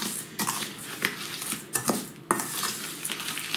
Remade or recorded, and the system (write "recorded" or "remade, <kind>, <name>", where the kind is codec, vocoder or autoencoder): recorded